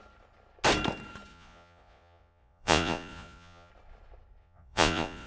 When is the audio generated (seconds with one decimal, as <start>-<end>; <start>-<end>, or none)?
1.3-3.7; 4.4-5.3